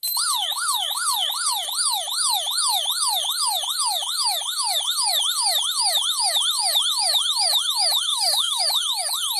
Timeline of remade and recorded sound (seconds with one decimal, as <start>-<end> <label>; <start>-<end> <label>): 0.0-8.1 recorded; 8.1-8.6 remade; 8.6-9.4 recorded